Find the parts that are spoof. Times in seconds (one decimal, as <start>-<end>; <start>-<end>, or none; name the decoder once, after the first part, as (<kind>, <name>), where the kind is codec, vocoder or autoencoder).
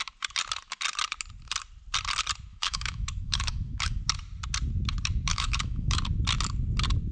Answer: 2.5-4.0 (autoencoder, DAC-VAE); 5.3-6.0